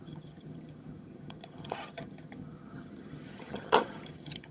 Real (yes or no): no